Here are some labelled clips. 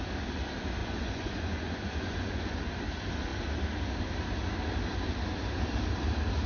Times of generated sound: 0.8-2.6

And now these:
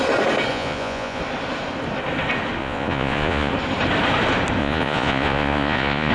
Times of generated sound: 0.5-1.2; 2.6-3.5; 4.6-6.1

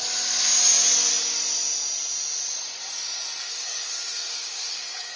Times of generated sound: 3.4-5.2

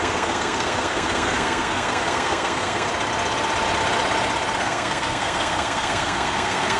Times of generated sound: 0.0-2.9; 4.6-6.8

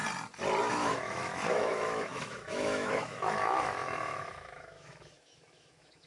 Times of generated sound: 0.7-6.1

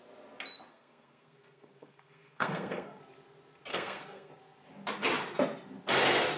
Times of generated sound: 0.7-3.0; 3.7-4.3

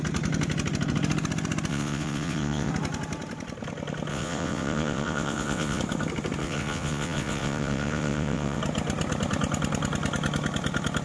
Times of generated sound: 1.7-2.7; 4.1-5.8; 6.4-8.6